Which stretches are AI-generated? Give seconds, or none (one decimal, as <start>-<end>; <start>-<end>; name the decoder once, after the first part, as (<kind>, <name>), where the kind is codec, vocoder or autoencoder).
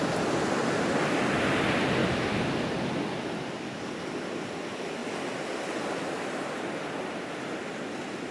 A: none